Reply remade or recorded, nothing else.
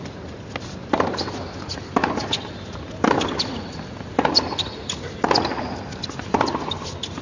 recorded